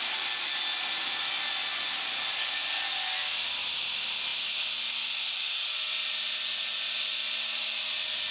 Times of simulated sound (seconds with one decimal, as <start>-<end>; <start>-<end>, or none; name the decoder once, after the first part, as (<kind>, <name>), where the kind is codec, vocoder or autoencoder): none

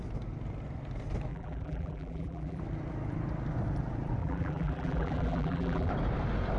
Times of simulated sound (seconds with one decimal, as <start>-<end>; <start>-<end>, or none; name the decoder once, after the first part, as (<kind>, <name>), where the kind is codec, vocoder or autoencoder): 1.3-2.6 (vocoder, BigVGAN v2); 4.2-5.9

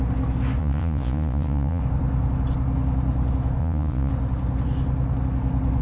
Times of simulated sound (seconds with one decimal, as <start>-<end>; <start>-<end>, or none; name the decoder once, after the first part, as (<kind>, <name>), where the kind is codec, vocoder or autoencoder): 0.6-1.8 (vocoder, Vocos); 3.6-4.1

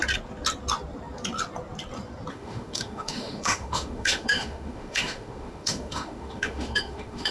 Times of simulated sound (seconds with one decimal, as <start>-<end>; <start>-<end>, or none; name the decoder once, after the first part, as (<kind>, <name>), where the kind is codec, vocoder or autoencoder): 2.3-7.3 (autoencoder, DAC-VAE)

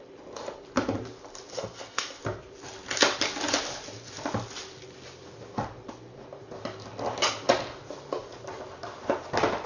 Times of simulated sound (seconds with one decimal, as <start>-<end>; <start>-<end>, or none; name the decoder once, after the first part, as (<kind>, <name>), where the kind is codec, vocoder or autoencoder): 1.5-2.2 (codec, SNAC)

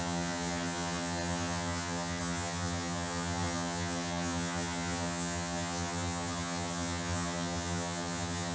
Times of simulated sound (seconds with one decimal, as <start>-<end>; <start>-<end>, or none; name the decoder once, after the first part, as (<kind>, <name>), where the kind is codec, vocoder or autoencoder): 0.0-8.5 (vocoder, HiFi-GAN)

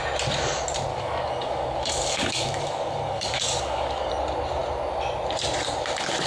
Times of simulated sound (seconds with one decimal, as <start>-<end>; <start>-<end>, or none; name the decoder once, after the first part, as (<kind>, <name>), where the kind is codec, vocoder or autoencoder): 0.9-4.1 (codec, DAC)